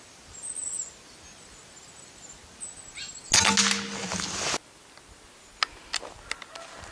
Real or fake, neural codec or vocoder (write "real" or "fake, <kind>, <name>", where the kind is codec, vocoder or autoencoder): real